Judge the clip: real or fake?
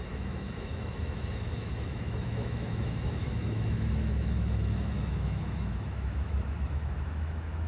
fake